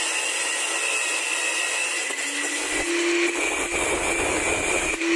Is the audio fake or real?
real